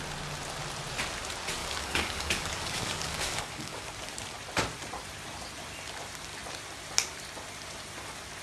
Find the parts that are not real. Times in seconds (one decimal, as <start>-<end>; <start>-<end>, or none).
1.6-3.9